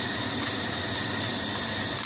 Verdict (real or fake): real